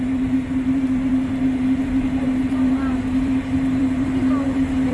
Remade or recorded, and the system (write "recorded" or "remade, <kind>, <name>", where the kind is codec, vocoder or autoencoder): remade, vocoder, BigVGAN v2